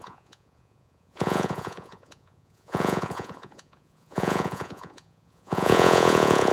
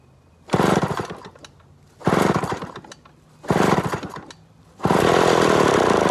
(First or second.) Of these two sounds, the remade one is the first